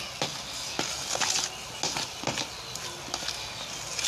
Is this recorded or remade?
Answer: recorded